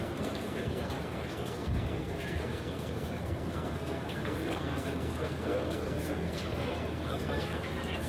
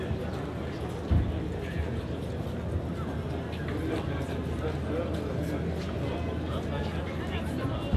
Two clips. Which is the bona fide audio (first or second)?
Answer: second